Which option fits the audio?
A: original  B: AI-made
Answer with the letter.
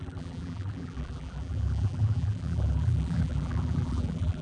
B